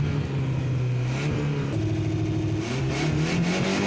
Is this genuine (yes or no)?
yes